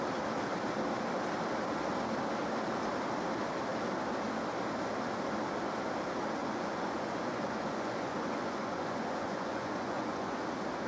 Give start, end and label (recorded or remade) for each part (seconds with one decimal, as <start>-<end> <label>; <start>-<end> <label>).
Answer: 0.0-6.4 recorded; 6.4-10.4 remade; 10.4-10.9 recorded

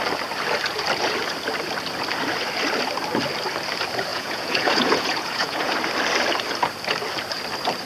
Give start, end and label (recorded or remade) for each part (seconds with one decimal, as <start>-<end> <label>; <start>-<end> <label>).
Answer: 0.0-4.1 recorded; 4.1-5.7 remade; 5.7-7.9 recorded

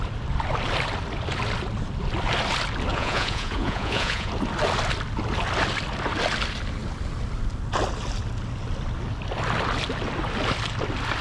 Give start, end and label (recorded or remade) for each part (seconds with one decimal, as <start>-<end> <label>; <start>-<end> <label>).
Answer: 0.0-2.9 recorded; 2.9-4.3 remade; 4.3-11.2 recorded